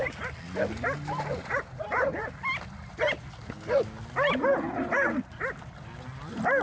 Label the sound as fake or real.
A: real